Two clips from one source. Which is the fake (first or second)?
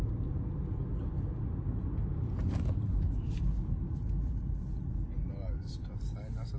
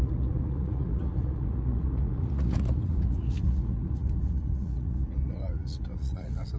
second